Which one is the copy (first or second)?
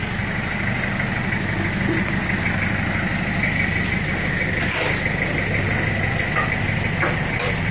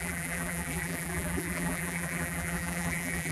second